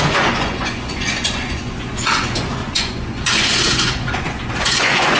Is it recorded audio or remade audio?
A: remade